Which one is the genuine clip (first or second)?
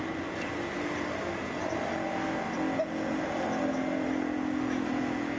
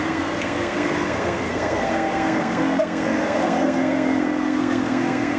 first